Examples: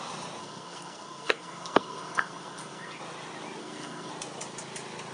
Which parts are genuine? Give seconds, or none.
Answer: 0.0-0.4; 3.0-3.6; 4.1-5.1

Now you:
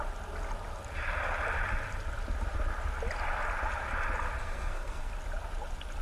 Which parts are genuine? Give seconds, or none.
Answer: 0.0-4.4; 5.1-6.0

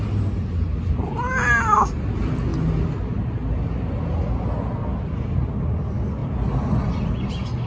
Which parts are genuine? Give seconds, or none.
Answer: 0.0-7.7

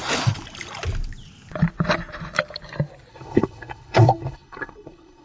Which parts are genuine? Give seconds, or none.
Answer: 0.0-3.1

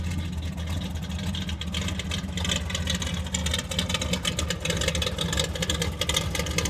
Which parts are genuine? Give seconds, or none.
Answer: 0.0-6.7

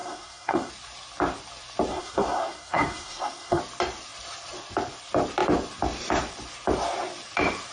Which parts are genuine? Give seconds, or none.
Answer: 0.7-1.9; 3.6-7.7

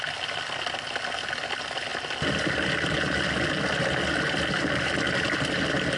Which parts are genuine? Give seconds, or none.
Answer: 0.0-6.0